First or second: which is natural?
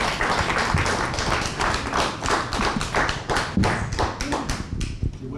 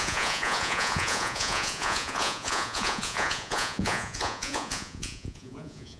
first